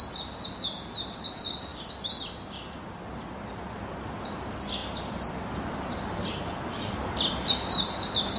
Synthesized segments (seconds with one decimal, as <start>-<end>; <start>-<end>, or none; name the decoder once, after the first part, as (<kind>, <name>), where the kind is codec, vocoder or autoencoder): none